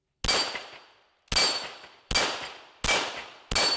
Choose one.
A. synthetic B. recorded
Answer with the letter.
B